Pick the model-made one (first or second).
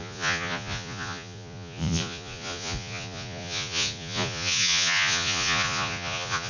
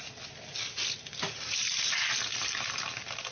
first